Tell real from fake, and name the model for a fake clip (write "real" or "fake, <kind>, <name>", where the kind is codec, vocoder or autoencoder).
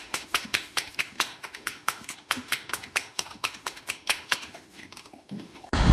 fake, autoencoder, DAC-VAE